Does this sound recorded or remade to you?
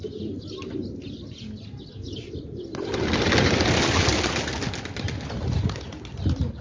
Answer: recorded